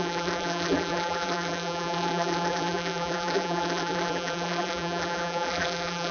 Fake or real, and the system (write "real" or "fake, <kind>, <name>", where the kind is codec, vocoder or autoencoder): fake, vocoder, BigVGAN v2